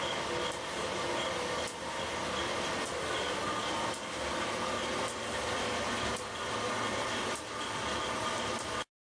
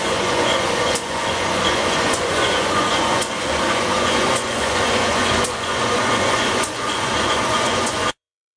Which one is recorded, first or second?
first